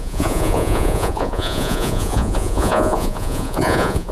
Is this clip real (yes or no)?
no